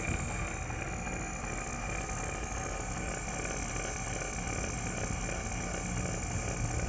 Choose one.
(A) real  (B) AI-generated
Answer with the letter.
A